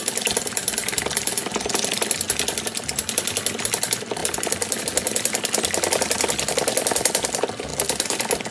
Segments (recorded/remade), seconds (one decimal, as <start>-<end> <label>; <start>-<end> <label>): 0.0-8.5 recorded